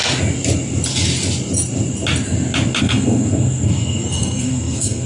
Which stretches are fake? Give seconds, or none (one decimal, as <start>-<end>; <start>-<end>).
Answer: 2.8-5.1